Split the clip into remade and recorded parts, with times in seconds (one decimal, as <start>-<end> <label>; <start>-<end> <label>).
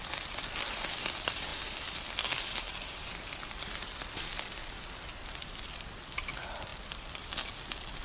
0.0-8.0 remade